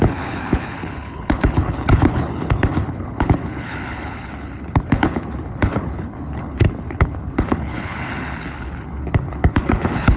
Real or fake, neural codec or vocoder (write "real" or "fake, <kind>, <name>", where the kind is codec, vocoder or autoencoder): fake, codec, HILCodec